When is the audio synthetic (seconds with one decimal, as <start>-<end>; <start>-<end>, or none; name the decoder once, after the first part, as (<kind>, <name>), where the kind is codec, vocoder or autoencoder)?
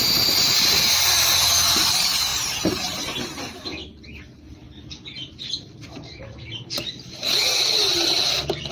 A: 0.0-2.3 (vocoder, BigVGAN v2); 5.8-8.7